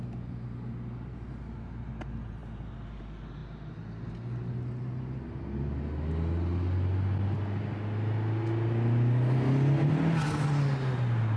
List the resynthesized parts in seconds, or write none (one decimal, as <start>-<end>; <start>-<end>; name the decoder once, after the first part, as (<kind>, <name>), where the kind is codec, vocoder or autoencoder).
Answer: none